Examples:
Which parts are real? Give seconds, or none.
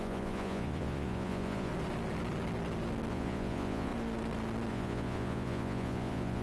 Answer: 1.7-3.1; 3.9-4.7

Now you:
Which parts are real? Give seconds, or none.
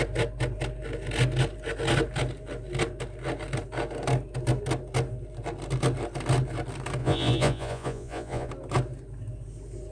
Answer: 0.0-7.0; 8.5-9.9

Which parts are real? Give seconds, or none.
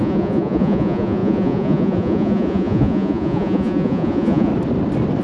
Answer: 4.5-5.2